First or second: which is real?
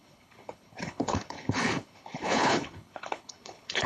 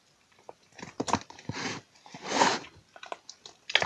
second